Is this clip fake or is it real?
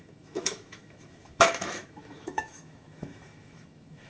fake